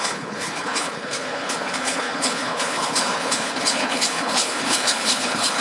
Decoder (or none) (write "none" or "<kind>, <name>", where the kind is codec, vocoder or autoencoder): codec, HILCodec